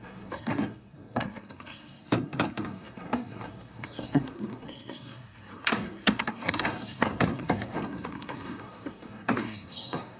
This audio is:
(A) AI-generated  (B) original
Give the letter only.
A